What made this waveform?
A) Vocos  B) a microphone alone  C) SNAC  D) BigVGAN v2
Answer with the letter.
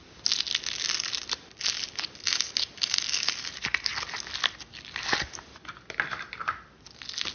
B